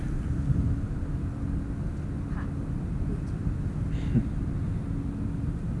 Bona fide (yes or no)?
yes